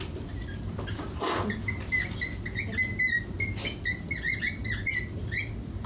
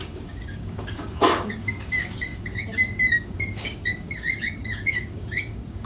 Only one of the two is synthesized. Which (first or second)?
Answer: second